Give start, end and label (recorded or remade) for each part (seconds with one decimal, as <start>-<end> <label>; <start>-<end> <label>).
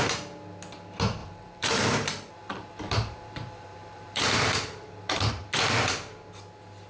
0.0-1.2 recorded; 1.2-5.3 remade; 5.3-6.9 recorded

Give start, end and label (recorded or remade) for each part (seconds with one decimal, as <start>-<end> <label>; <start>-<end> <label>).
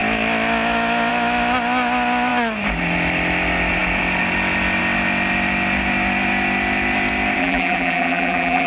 0.0-7.4 recorded; 7.4-8.7 remade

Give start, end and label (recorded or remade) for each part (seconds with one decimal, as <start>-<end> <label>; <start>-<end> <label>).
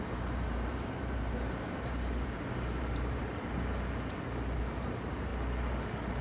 0.0-3.2 remade; 3.2-4.6 recorded; 4.6-5.3 remade; 5.3-6.2 recorded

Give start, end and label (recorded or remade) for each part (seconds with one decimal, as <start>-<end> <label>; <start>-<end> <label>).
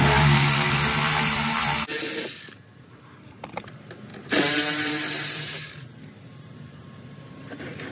0.0-1.9 remade; 1.9-2.8 recorded; 2.8-7.9 remade